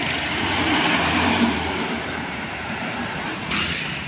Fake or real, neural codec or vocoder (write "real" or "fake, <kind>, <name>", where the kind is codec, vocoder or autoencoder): fake, vocoder, BigVGAN v2